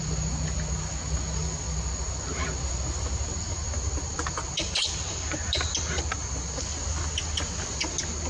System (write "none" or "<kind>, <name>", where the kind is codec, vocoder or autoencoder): none